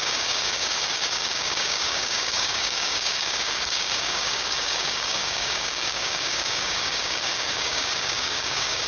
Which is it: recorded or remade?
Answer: remade